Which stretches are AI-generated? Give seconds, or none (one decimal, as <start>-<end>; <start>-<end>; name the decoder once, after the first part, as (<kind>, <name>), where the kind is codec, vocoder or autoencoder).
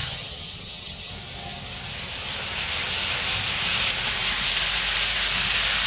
0.0-1.1 (vocoder, HiFi-GAN)